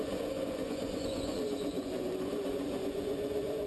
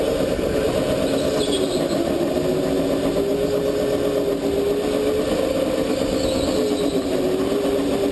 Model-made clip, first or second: first